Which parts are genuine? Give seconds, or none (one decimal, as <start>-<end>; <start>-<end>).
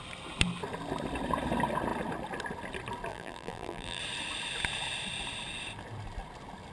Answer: 0.0-3.1; 4.0-6.7